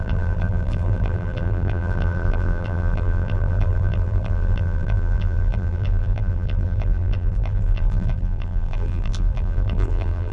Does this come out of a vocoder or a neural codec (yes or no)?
yes